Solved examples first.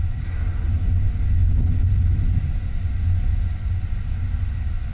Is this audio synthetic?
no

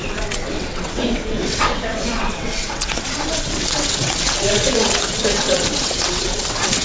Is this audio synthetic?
yes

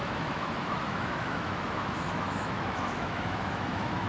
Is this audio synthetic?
yes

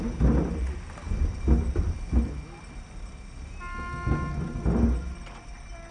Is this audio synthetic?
no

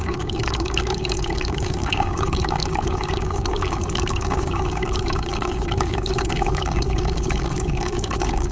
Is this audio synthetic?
yes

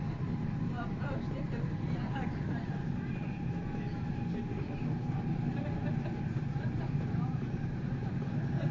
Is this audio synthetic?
yes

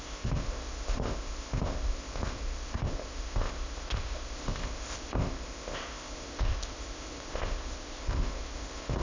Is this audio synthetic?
yes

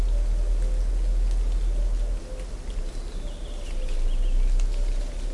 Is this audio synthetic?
no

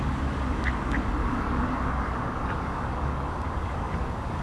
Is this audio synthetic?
yes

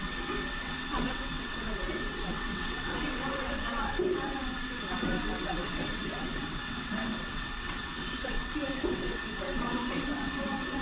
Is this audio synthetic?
yes